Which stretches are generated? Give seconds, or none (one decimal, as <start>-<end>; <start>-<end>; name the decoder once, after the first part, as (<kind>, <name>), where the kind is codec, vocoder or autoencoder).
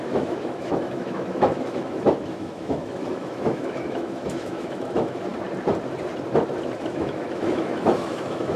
0.0-5.3 (autoencoder, DAC-VAE); 6.9-8.6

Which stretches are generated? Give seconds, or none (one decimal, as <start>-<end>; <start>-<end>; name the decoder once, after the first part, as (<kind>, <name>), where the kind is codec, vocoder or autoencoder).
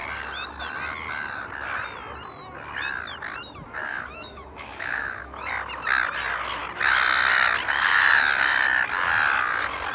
3.9-5.5 (autoencoder, DAC-VAE)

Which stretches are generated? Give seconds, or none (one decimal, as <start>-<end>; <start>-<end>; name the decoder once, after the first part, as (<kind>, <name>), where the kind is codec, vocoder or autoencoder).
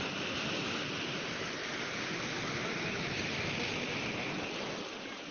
none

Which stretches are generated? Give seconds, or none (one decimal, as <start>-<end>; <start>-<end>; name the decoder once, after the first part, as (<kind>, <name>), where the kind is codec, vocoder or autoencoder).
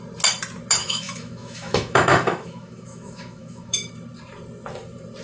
0.8-3.9 (autoencoder, DAC-VAE)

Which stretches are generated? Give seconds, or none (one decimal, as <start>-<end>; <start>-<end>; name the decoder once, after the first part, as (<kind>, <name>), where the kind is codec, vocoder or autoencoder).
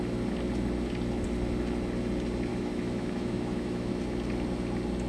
2.5-3.9 (autoencoder, DAC-VAE)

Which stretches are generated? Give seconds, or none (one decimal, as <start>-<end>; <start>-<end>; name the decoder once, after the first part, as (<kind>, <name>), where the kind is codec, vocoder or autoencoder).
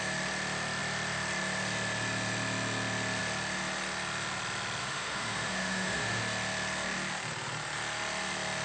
4.8-6.2 (autoencoder, DAC-VAE)